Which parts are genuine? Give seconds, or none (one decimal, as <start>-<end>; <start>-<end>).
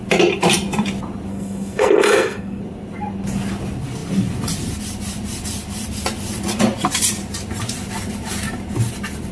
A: 0.0-1.3; 2.6-9.3